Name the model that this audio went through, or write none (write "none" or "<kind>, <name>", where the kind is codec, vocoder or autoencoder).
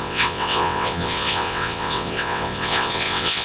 vocoder, WaveNeXt